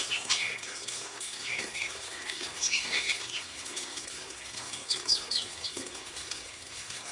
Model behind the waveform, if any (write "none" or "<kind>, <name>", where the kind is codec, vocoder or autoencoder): codec, SNAC